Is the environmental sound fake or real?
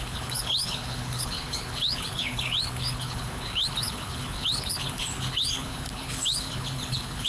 fake